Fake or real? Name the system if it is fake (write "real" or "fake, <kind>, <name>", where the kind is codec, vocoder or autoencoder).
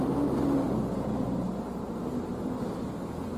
real